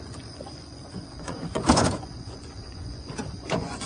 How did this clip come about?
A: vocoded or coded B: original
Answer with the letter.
A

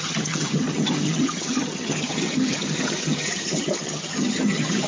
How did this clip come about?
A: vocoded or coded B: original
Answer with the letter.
A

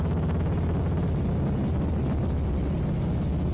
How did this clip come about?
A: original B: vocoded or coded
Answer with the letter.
A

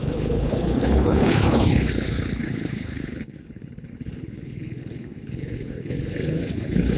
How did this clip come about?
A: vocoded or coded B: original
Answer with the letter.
A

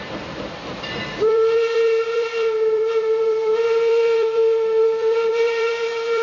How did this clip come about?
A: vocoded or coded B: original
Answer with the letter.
A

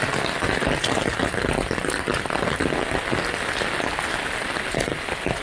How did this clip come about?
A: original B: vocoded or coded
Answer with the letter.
A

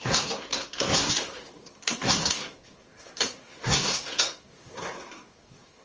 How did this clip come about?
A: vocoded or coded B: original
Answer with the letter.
A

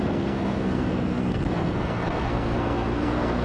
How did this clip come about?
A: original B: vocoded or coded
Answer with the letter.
B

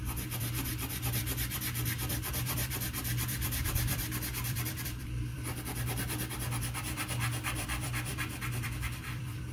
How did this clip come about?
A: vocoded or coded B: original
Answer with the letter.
A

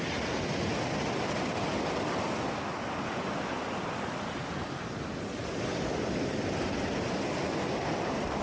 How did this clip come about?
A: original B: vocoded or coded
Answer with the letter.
A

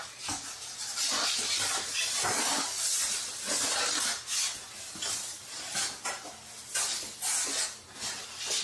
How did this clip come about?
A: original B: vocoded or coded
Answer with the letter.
A